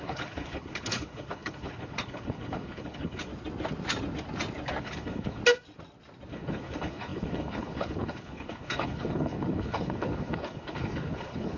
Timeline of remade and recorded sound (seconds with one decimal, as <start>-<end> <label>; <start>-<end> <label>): 0.0-3.3 remade; 3.3-4.8 recorded; 4.8-5.4 remade; 5.4-6.3 recorded; 6.3-11.6 remade